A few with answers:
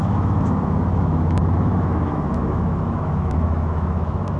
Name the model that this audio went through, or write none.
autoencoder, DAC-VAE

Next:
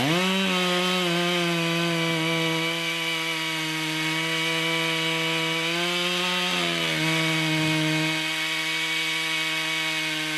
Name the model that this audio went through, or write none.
none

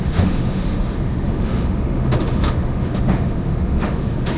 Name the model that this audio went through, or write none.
autoencoder, DAC-VAE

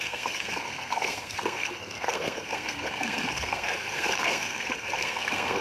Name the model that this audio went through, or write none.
codec, SNAC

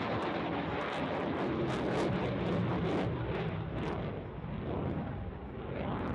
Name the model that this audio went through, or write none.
none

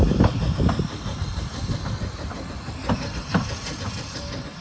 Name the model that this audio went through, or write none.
none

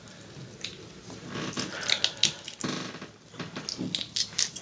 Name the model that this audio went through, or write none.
none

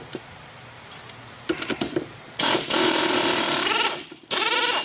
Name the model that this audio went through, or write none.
vocoder, BigVGAN v2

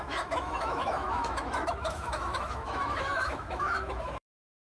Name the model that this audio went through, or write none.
autoencoder, DAC-VAE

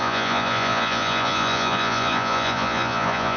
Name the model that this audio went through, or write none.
vocoder, Vocos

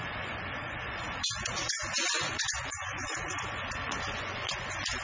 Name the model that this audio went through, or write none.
vocoder, Vocos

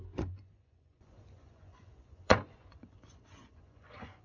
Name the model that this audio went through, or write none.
vocoder, Vocos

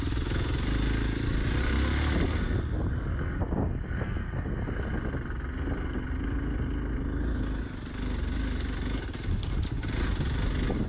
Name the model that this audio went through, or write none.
none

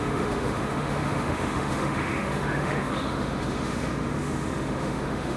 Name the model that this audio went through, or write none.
autoencoder, DAC-VAE